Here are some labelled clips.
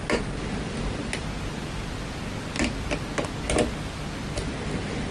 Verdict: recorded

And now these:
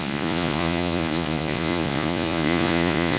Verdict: remade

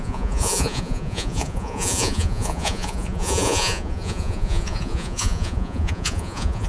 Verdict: remade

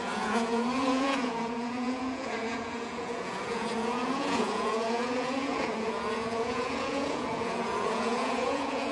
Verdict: remade